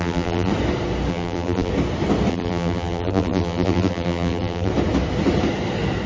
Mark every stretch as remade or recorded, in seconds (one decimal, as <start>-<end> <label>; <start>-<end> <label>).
0.0-0.5 remade; 0.5-1.1 recorded; 1.1-1.7 remade; 1.7-2.3 recorded; 2.3-4.7 remade; 4.7-6.1 recorded